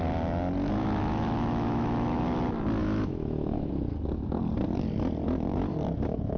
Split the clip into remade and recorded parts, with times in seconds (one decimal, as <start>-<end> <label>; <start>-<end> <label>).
0.0-0.8 recorded; 0.8-2.2 remade; 2.2-2.8 recorded; 2.8-3.7 remade; 3.7-6.4 recorded

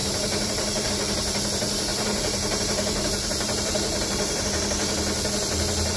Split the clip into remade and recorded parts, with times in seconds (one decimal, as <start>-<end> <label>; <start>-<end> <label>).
0.0-0.9 remade; 0.9-1.9 recorded; 1.9-4.5 remade; 4.5-6.0 recorded

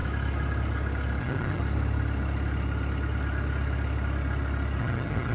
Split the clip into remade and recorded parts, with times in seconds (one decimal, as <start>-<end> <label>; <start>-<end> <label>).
0.0-1.2 recorded; 1.2-1.6 remade; 1.6-4.8 recorded; 4.8-5.3 remade

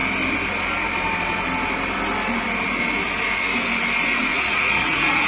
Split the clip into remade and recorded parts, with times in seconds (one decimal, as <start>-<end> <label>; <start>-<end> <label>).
0.0-4.2 recorded; 4.2-5.3 remade

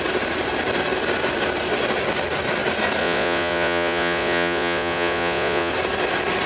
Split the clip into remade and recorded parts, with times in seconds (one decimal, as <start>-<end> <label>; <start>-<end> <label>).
0.0-3.0 recorded; 3.0-5.7 remade; 5.7-6.5 recorded

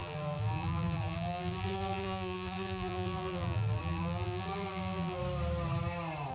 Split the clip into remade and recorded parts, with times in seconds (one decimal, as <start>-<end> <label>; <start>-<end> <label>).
0.0-5.2 remade; 5.2-6.3 recorded

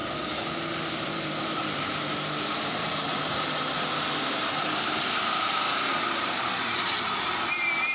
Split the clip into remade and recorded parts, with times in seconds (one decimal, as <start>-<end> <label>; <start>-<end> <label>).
0.0-0.7 recorded; 0.7-2.1 remade; 2.1-2.7 recorded; 2.7-7.9 remade